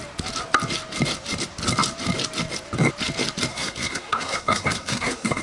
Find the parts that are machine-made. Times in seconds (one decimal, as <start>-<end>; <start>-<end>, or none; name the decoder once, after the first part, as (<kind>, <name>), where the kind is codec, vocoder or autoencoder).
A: 3.5-5.4 (codec, SNAC)